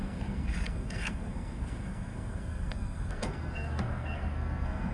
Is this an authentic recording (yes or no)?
no